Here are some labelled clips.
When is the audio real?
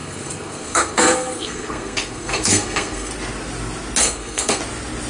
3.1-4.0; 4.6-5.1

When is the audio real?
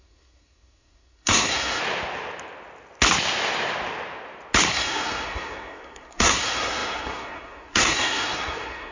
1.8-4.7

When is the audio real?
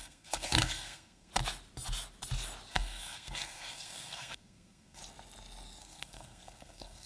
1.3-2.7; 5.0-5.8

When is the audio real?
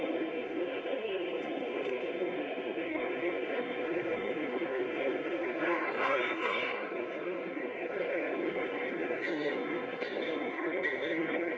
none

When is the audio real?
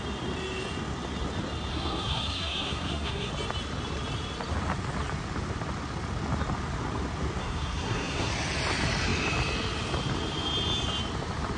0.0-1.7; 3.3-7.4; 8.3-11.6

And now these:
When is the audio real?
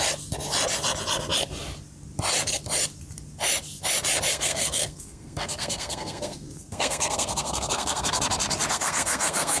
0.0-4.3; 8.2-8.7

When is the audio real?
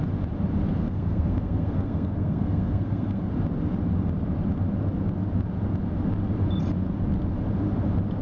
0.0-0.8; 3.3-8.2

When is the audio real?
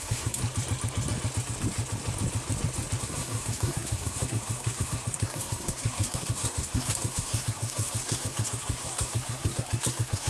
0.4-3.0